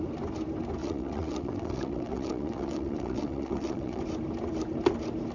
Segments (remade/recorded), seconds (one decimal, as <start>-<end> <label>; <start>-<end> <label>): 0.0-0.8 recorded; 0.8-4.0 remade; 4.0-5.3 recorded

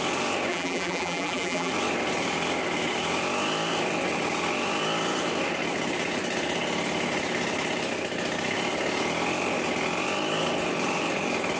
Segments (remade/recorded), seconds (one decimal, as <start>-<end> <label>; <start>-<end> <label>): 0.0-0.5 recorded; 0.5-1.7 remade; 1.7-11.6 recorded

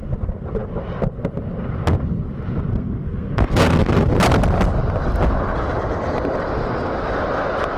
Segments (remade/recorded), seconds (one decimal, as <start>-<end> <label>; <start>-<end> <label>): 0.0-2.7 recorded; 2.7-4.1 remade; 4.1-7.8 recorded

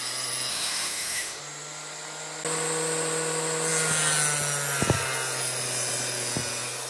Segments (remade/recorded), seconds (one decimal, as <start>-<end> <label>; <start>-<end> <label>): 0.0-0.5 recorded; 0.5-1.4 remade; 1.4-6.9 recorded

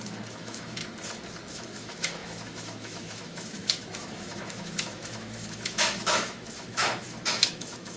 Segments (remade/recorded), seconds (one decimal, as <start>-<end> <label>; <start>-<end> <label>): 0.0-0.8 remade; 0.8-1.5 recorded; 1.5-8.0 remade

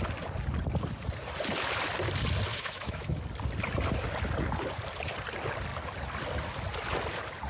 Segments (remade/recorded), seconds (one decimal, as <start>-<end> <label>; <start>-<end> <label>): 0.0-2.5 recorded; 2.5-3.2 remade; 3.2-7.5 recorded